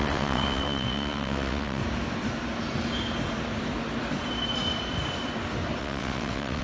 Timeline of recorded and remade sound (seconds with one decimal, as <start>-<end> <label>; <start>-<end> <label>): 0.0-1.8 remade; 1.8-5.8 recorded; 5.8-6.6 remade